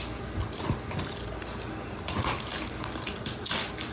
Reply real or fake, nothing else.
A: real